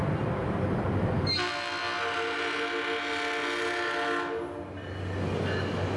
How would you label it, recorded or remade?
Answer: recorded